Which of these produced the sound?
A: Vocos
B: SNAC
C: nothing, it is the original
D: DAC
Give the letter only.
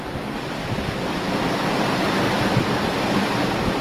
C